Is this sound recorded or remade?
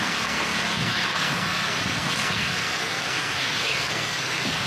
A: remade